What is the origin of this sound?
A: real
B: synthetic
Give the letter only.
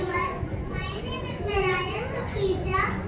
B